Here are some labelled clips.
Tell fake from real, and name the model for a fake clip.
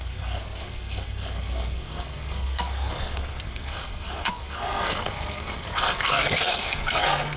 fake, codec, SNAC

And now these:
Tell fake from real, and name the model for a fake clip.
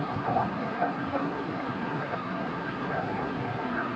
fake, codec, SNAC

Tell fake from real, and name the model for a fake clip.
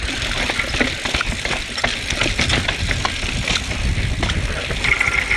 real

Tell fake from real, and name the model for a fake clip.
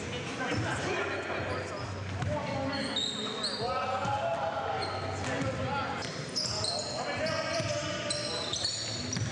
real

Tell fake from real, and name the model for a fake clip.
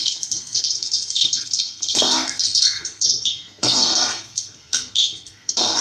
fake, codec, SNAC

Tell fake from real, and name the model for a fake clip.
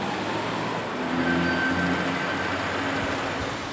real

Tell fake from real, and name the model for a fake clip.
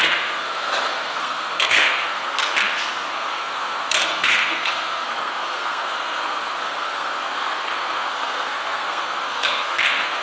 fake, codec, SNAC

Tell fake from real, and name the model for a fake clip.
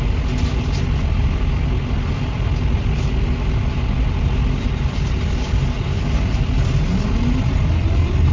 real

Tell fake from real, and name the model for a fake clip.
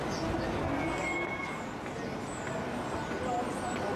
real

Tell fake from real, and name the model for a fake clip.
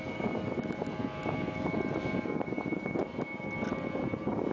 real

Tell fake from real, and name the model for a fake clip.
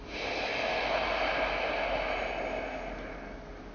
real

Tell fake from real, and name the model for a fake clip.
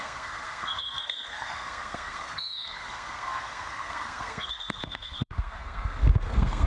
fake, codec, SNAC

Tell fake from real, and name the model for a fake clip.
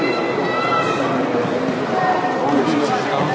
real